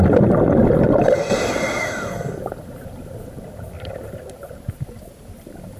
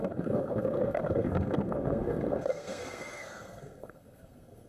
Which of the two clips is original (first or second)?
first